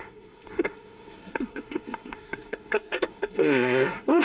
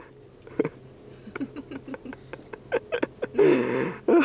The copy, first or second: first